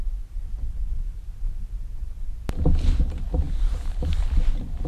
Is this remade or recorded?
recorded